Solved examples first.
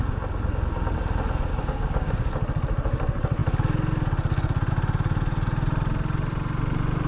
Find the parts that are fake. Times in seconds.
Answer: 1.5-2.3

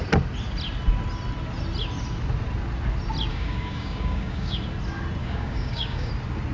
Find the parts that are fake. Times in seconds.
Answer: 3.3-4.6; 5.2-6.1

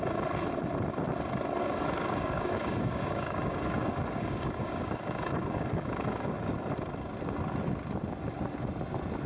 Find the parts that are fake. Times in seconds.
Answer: 1.6-6.3